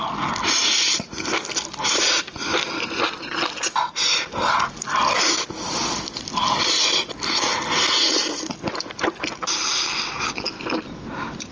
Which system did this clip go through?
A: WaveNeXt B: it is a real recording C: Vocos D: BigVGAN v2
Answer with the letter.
B